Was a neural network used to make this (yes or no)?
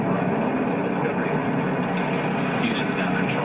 no